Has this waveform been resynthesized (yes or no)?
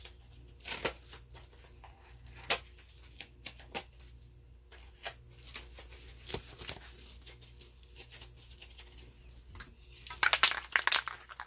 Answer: no